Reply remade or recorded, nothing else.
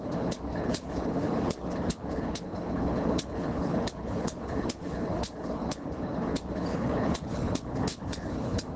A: remade